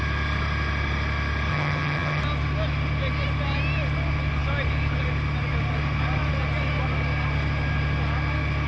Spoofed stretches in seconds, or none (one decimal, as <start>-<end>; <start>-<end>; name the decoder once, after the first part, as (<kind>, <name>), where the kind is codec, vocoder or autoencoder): 1.5-2.2 (vocoder, HiFi-GAN)